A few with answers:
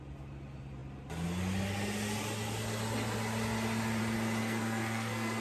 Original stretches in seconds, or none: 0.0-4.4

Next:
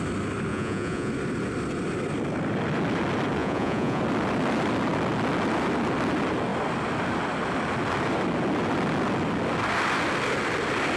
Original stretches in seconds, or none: 0.0-0.5; 1.1-3.4; 4.0-11.0